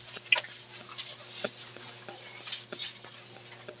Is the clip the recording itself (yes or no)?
yes